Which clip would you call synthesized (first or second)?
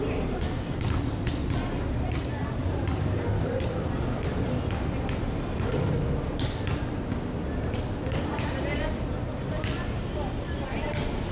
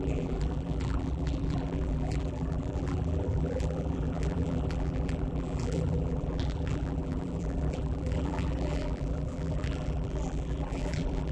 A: second